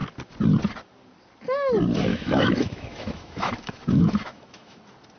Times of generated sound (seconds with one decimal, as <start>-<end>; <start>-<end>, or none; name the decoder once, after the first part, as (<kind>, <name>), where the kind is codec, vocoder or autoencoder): 2.1-4.8 (autoencoder, DAC-VAE)